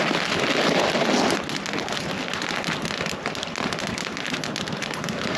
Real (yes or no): yes